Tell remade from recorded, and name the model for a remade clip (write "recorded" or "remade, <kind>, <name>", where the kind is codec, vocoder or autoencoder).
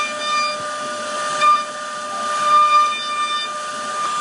recorded